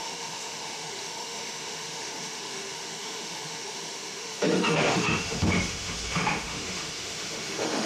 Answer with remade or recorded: remade